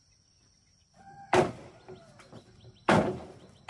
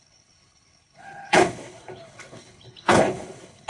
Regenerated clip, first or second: second